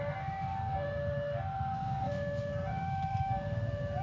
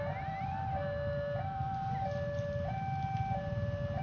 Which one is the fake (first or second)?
first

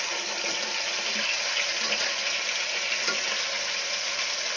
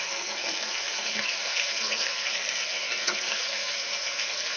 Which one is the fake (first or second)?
second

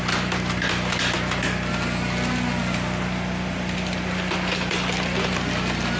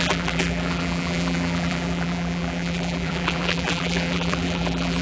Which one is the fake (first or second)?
second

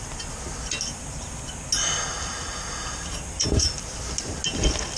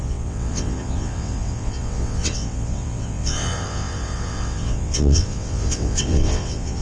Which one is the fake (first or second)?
second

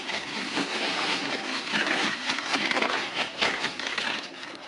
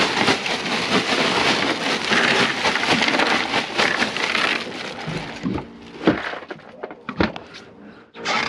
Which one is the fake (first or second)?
first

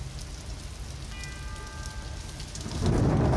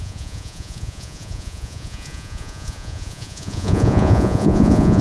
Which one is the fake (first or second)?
second